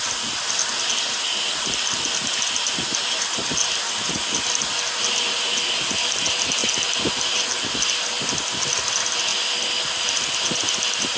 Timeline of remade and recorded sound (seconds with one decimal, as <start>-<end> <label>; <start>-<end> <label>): 0.0-3.6 recorded; 3.6-4.4 remade; 4.4-11.2 recorded

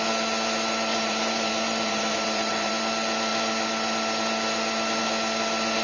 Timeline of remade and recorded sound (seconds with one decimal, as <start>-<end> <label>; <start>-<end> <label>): 0.0-0.9 recorded; 0.9-2.7 remade; 2.7-5.8 recorded